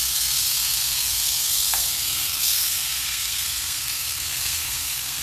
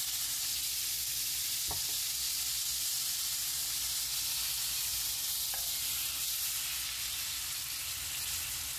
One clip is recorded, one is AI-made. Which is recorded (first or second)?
second